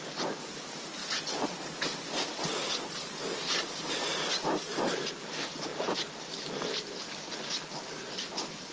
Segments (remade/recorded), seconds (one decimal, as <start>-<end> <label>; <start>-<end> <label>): 0.0-1.0 remade; 1.0-3.3 recorded; 3.3-8.7 remade